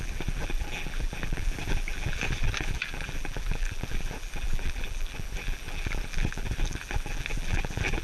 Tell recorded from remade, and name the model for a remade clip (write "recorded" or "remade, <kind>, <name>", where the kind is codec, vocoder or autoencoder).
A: remade, vocoder, BigVGAN v2